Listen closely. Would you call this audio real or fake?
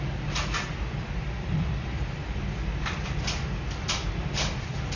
fake